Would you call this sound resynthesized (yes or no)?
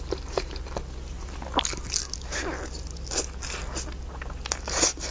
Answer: no